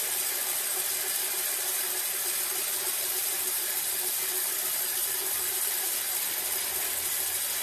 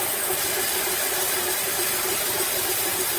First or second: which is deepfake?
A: second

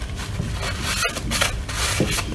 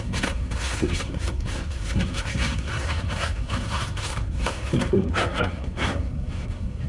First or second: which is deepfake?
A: second